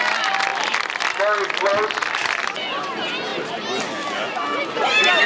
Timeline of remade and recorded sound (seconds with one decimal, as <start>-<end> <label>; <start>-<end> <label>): 0.0-0.5 recorded; 0.5-1.2 remade; 1.2-1.7 recorded; 1.7-2.5 remade; 2.5-3.3 recorded; 3.3-3.8 remade; 3.8-5.3 recorded